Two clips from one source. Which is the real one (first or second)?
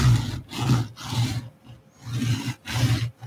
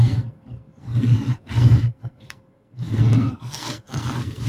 first